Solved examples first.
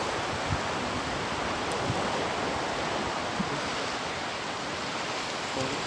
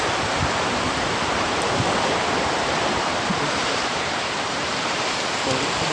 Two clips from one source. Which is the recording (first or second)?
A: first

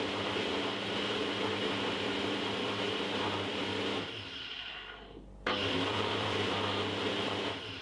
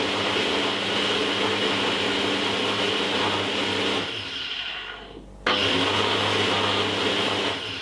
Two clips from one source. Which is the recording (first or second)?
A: second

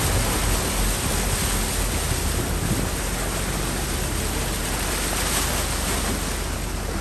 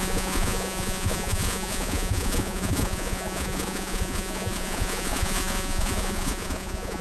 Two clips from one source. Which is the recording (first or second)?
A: first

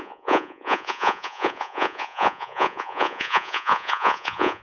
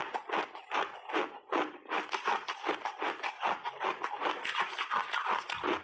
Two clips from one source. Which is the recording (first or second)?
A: second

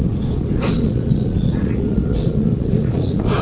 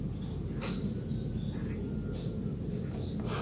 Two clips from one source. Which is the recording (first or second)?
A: second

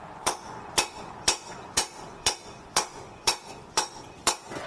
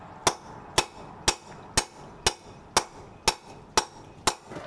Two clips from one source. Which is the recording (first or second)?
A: second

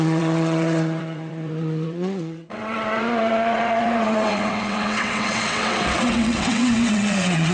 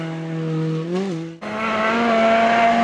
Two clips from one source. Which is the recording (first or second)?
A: second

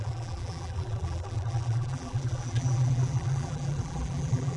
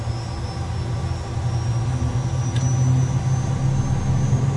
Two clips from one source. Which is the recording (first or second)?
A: second